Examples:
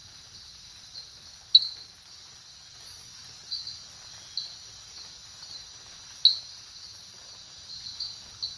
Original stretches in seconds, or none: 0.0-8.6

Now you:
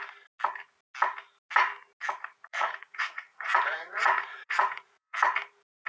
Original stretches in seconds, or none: 0.0-2.5; 5.2-5.9

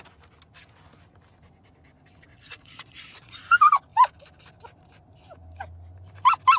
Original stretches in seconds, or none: 0.0-2.3; 3.4-6.6

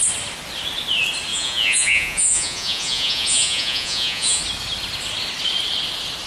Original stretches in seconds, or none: 0.0-1.3; 4.4-6.3

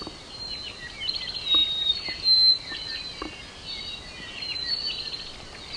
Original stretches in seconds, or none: 0.0-5.8

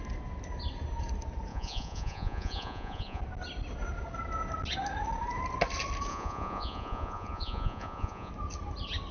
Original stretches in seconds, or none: 0.0-1.5; 3.2-6.1; 8.3-9.1